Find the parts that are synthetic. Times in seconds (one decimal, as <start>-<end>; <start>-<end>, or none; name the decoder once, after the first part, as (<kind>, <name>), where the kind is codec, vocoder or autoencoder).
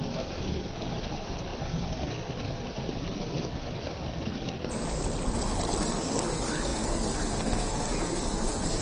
0.0-5.0 (codec, SNAC); 5.8-8.8